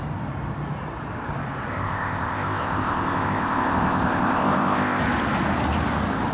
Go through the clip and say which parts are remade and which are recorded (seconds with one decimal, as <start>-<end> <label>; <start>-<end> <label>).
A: 0.0-1.7 recorded; 1.7-5.0 remade; 5.0-6.3 recorded